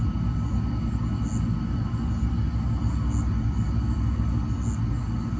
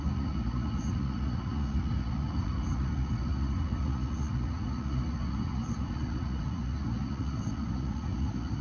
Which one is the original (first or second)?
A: first